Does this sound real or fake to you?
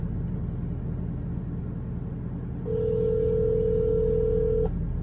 real